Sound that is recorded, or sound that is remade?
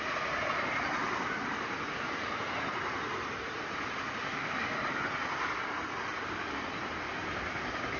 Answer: recorded